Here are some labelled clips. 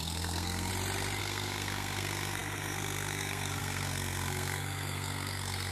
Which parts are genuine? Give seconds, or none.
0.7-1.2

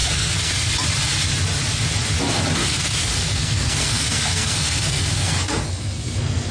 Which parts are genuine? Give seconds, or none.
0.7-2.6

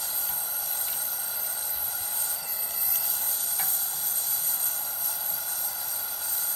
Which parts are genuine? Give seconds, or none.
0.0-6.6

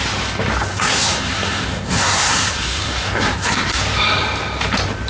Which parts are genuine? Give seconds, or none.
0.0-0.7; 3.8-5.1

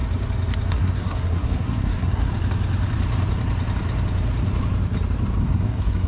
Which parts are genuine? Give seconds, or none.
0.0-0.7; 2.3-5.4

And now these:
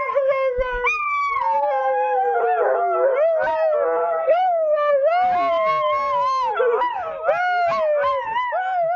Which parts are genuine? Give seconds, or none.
0.0-1.8; 2.4-4.0; 4.9-9.0

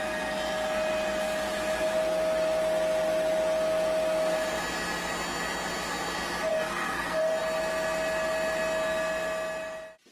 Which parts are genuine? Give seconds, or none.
0.0-6.5; 7.4-10.1

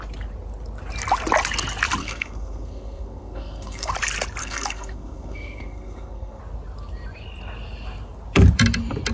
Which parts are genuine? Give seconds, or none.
0.0-2.0; 3.9-4.4; 6.4-9.1